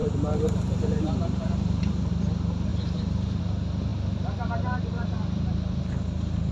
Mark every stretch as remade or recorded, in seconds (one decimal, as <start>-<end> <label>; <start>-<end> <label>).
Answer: 0.0-2.1 remade; 2.1-2.7 recorded; 2.7-3.4 remade; 3.4-6.5 recorded